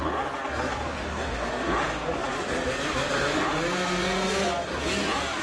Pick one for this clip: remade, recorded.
recorded